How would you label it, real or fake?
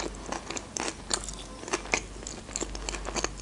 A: real